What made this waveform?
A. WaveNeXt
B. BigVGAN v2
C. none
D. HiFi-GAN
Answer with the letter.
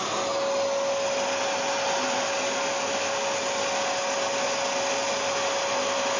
C